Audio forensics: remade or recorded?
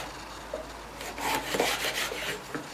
recorded